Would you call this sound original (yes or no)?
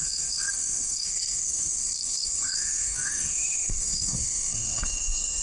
no